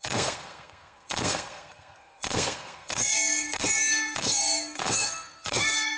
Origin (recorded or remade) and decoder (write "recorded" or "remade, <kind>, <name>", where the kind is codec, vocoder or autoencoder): remade, codec, SNAC